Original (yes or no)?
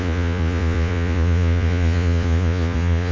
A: no